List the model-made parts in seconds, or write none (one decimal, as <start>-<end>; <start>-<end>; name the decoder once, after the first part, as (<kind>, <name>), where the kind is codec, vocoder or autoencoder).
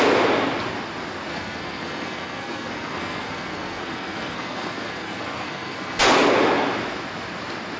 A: 1.3-6.0 (codec, SNAC)